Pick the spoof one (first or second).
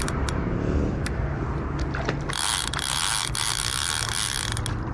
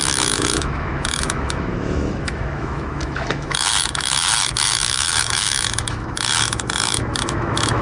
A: second